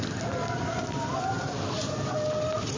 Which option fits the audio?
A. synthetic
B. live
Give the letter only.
B